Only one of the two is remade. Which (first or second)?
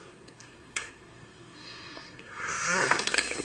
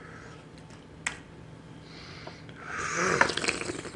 first